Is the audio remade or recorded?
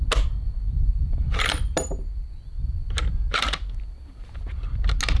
recorded